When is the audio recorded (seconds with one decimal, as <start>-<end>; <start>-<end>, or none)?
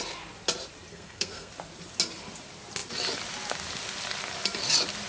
0.0-0.9; 1.5-5.1